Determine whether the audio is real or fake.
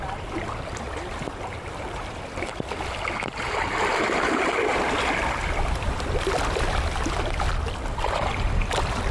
fake